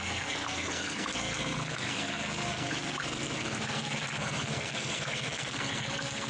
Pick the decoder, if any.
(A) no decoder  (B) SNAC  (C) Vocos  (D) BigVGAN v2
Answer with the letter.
B